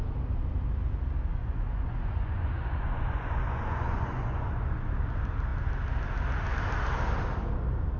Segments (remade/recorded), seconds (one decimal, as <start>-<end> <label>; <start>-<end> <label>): 0.0-1.3 recorded; 1.3-4.9 remade; 4.9-8.0 recorded